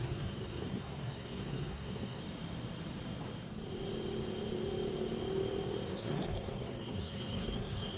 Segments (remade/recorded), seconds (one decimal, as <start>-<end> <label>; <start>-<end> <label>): 0.0-2.2 remade; 2.2-5.9 recorded; 5.9-8.0 remade